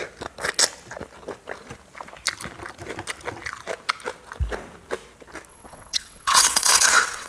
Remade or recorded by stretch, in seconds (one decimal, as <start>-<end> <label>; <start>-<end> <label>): 0.0-5.5 recorded; 5.5-7.3 remade